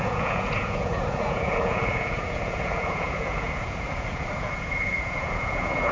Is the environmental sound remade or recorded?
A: remade